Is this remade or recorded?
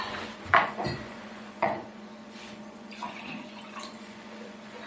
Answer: remade